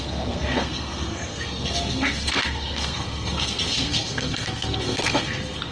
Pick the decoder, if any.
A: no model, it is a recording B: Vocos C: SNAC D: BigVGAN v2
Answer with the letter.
C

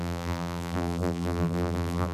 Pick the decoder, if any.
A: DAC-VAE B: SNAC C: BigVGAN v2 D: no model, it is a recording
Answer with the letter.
C